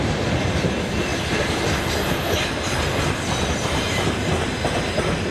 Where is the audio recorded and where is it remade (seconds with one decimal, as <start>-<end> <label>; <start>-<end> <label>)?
0.0-5.3 recorded